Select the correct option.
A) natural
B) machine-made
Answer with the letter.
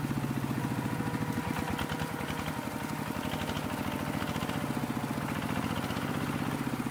A